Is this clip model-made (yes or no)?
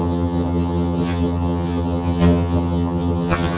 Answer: yes